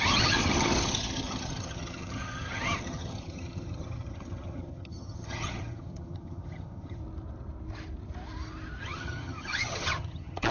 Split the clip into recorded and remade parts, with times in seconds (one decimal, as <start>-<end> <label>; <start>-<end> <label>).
0.0-7.0 remade; 7.0-8.8 recorded; 8.8-10.5 remade